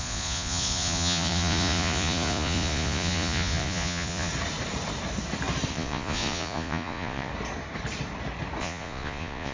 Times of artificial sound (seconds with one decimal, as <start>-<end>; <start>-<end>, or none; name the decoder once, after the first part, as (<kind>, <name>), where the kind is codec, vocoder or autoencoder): 0.0-4.3 (vocoder, Vocos); 5.7-7.3; 8.6-9.5